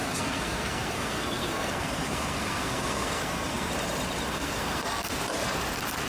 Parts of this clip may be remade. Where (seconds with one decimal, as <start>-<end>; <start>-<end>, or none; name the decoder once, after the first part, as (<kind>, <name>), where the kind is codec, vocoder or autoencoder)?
0.0-3.7 (codec, SNAC); 4.3-5.1

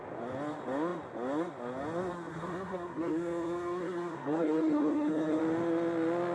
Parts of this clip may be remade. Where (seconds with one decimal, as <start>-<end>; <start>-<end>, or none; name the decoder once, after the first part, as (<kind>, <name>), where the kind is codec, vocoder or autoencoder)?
2.3-5.4 (codec, SNAC)

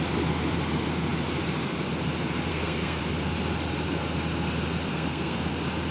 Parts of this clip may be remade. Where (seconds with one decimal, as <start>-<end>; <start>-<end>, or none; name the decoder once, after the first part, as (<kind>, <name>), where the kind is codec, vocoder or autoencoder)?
2.5-3.0 (codec, SNAC); 4.9-5.5

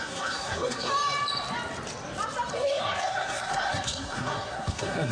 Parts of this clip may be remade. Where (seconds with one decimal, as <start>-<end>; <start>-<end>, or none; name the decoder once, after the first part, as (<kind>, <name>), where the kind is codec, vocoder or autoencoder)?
0.0-0.9 (codec, SNAC); 2.5-5.1